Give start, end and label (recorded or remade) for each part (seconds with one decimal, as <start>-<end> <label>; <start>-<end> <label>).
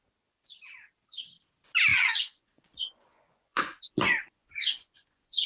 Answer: 0.0-1.9 recorded; 1.9-5.5 remade